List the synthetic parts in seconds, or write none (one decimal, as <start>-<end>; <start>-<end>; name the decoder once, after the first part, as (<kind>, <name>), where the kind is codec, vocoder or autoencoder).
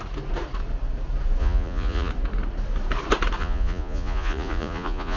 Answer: 1.4-2.1 (vocoder, Vocos); 3.4-5.2